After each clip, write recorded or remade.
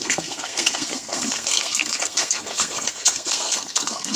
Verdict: remade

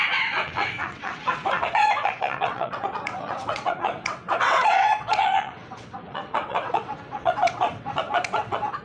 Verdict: remade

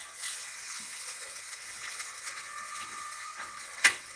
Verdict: remade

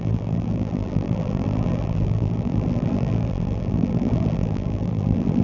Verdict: remade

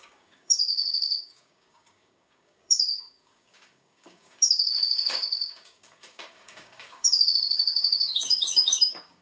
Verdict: remade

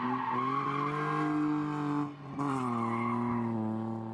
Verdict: recorded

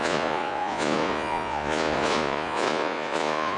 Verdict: remade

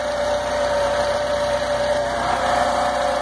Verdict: recorded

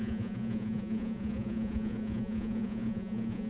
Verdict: remade